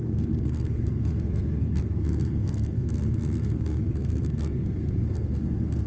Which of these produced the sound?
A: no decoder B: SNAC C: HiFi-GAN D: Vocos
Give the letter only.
B